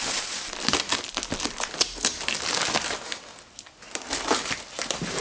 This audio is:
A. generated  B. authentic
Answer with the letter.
B